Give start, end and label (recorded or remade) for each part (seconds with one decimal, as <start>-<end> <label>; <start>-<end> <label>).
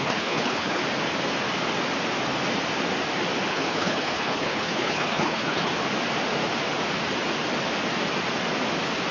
0.0-0.8 remade; 0.8-3.5 recorded; 3.5-5.7 remade; 5.7-9.1 recorded